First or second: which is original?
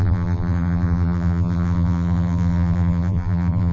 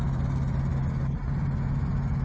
second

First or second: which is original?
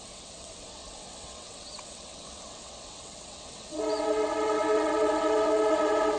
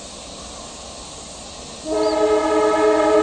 second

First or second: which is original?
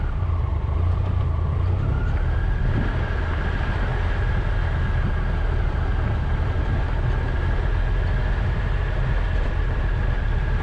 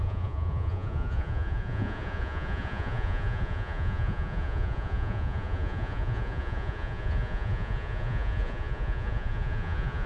first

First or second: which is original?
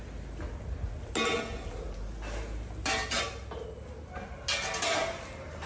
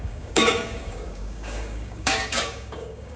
first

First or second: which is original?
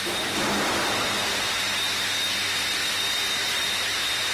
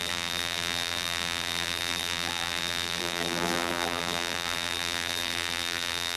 first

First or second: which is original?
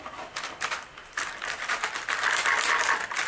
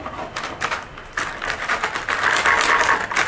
second